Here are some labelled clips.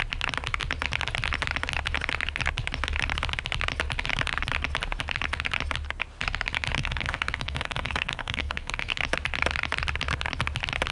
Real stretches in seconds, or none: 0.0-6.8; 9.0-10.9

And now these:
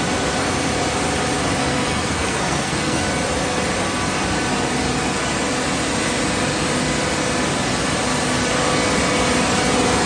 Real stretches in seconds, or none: 0.0-1.6; 3.0-10.1

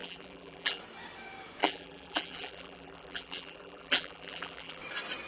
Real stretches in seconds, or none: 0.8-1.6; 4.8-5.3

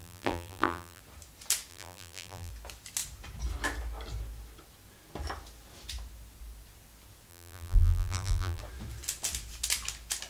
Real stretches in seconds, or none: 1.0-1.7; 2.5-7.3; 8.6-10.3

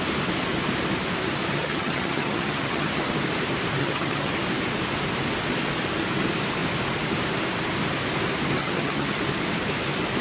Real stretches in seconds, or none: 0.0-1.5; 3.0-3.8; 4.3-8.6; 9.2-10.2

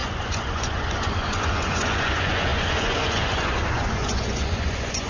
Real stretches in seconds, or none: none

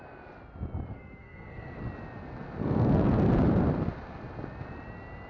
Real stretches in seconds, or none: 0.0-0.9; 1.8-2.6; 3.3-5.3

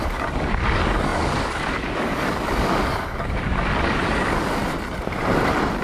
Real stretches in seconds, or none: 4.6-5.8